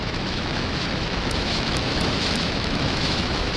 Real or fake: fake